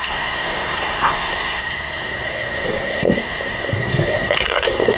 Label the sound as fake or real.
fake